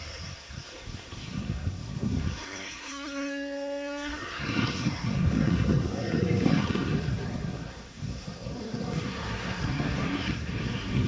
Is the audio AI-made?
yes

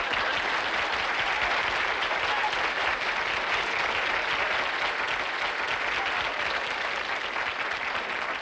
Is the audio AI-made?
no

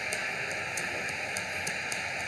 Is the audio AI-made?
no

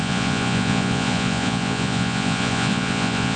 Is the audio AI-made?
yes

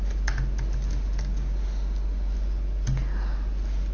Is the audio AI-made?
no